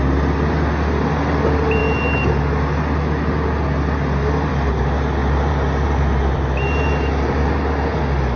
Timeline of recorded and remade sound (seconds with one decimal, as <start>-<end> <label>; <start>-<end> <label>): 0.0-5.2 recorded; 5.2-7.5 remade; 7.5-8.4 recorded